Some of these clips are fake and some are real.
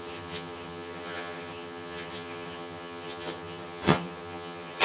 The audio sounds fake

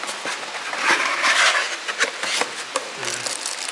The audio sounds real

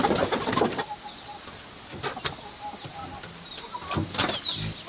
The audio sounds real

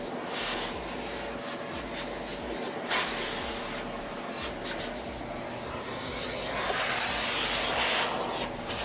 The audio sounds real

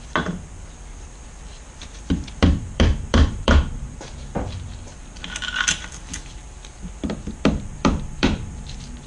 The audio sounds fake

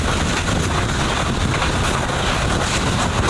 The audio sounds fake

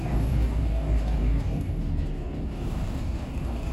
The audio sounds fake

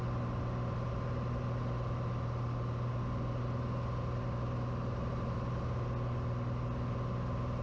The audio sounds real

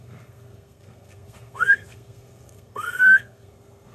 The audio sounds fake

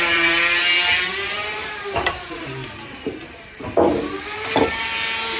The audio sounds fake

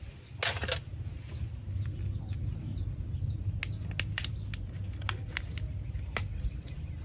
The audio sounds real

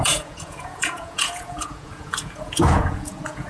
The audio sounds fake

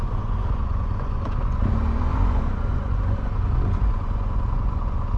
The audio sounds fake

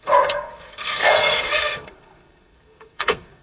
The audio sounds fake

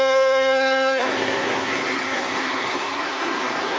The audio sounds fake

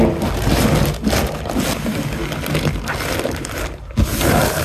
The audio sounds real